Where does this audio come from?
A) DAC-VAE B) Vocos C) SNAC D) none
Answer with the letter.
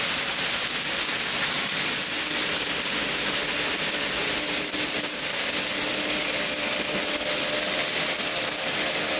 D